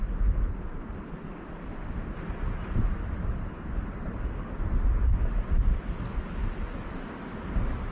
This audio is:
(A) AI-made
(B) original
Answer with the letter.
B